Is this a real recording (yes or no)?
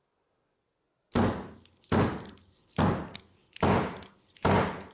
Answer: yes